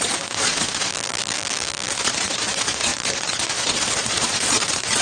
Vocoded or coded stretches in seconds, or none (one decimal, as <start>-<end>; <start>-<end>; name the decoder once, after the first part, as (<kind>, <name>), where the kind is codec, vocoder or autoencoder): 0.0-0.9 (vocoder, Vocos); 1.9-5.0